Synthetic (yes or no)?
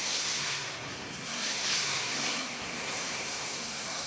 yes